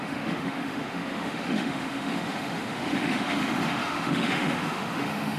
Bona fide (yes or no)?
no